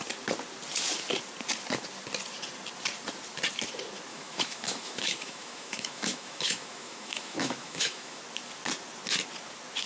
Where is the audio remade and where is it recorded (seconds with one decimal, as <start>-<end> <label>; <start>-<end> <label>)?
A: 0.0-4.1 recorded; 4.1-8.2 remade; 8.2-9.9 recorded